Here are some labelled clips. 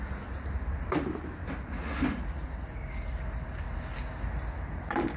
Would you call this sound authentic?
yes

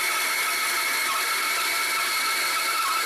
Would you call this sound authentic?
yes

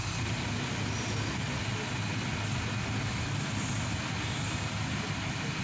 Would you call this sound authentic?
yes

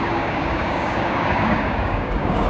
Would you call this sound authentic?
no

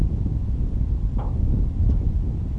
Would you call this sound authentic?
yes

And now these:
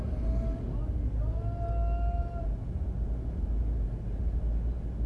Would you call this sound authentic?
yes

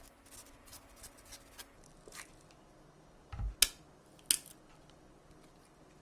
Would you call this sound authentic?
yes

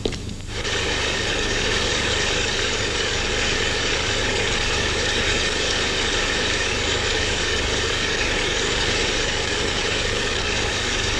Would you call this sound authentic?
no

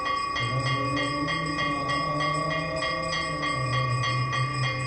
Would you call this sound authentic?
yes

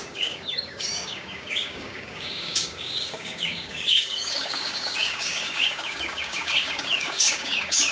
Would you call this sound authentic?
no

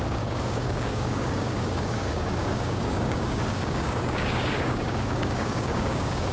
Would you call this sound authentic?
no